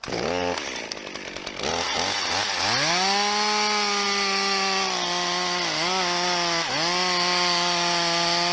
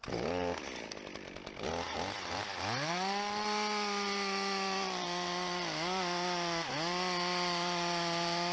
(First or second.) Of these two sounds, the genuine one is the first